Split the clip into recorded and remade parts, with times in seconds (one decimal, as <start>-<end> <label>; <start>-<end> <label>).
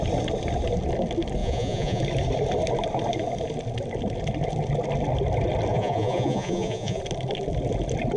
0.0-1.4 recorded; 1.4-2.0 remade; 2.0-5.7 recorded; 5.7-7.0 remade; 7.0-8.2 recorded